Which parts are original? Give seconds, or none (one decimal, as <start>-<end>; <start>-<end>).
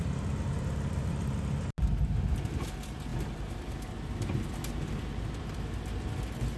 0.0-6.6